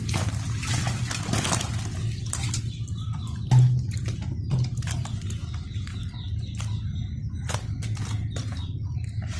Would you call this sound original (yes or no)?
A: yes